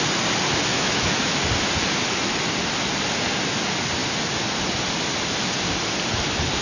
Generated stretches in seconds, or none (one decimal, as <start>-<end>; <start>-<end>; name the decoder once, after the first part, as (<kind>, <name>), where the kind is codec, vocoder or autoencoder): 0.7-1.4 (autoencoder, DAC-VAE)